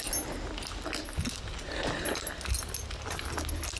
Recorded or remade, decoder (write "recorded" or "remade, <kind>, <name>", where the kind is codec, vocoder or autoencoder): recorded